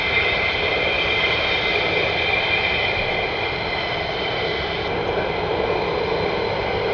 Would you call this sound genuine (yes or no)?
yes